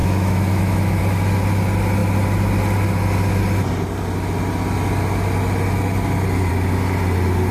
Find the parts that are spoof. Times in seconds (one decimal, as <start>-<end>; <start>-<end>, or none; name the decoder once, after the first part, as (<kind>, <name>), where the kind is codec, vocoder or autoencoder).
0.0-1.0 (autoencoder, DAC-VAE)